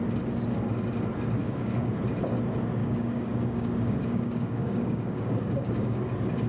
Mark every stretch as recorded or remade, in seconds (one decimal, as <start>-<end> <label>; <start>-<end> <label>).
0.0-1.4 recorded; 1.4-1.9 remade; 1.9-2.8 recorded; 2.8-6.0 remade; 6.0-6.5 recorded